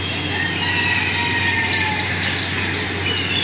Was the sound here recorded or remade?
recorded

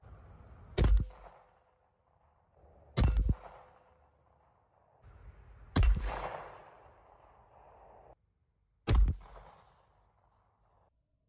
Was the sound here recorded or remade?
recorded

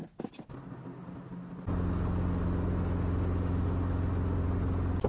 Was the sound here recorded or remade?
recorded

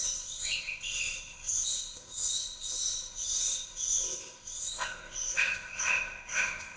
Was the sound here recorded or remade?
remade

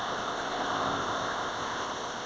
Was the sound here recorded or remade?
remade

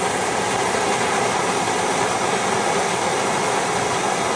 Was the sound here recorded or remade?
recorded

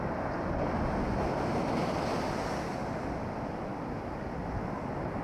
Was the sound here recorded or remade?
recorded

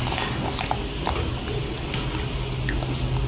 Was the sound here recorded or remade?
recorded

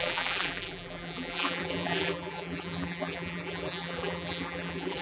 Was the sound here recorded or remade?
remade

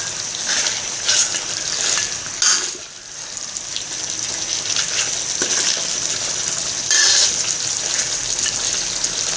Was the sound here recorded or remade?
recorded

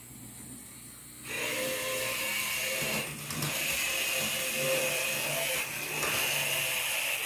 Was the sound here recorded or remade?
recorded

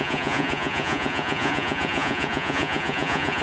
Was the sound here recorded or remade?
remade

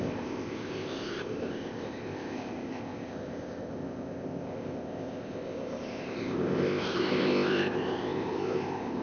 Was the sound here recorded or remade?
remade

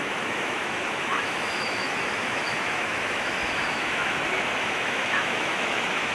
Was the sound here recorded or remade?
remade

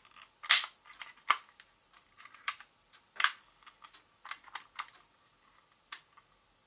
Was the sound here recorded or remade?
recorded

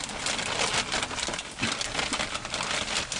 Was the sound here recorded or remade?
recorded